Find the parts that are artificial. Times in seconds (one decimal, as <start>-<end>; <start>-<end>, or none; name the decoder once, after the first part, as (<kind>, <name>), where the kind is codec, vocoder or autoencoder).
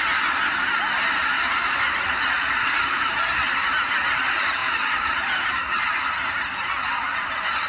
1.2-3.1 (vocoder, BigVGAN v2); 4.6-5.8